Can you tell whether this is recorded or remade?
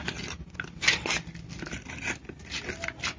recorded